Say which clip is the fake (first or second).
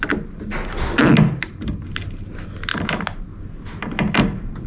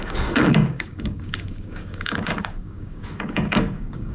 second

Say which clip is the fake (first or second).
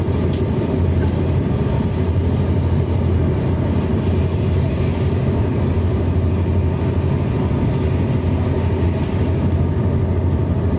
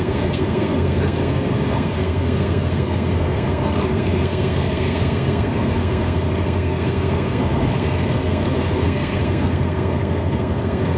second